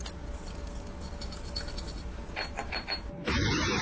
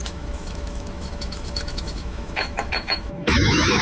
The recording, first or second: first